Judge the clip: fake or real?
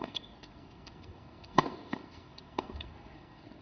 fake